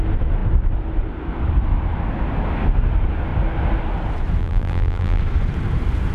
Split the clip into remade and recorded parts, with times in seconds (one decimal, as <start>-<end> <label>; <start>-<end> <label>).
0.0-4.4 recorded; 4.4-5.2 remade; 5.2-6.1 recorded